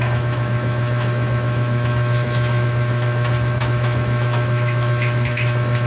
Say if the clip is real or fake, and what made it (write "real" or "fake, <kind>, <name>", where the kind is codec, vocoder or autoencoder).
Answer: fake, autoencoder, DAC-VAE